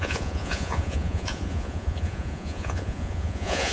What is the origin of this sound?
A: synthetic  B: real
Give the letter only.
A